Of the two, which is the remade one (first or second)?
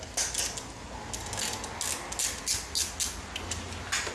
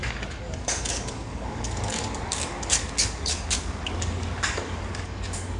second